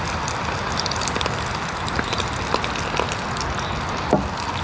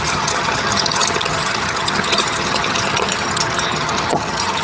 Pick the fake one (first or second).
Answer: second